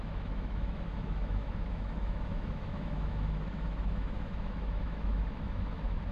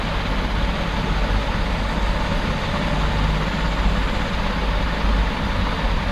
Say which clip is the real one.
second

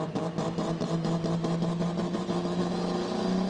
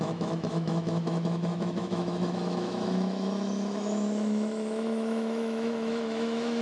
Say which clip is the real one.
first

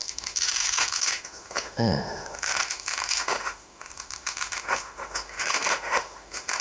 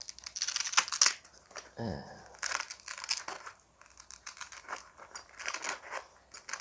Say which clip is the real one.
second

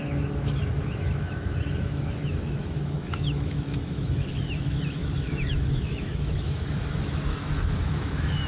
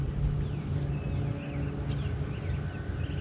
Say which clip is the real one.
second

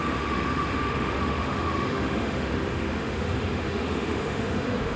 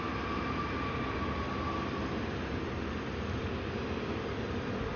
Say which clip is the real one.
second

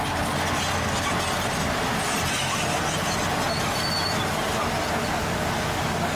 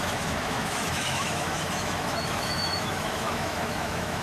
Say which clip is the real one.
first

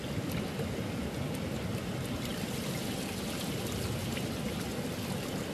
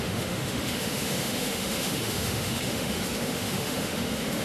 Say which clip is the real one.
first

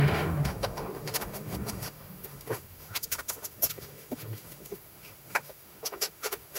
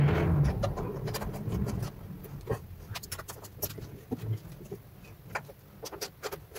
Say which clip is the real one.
second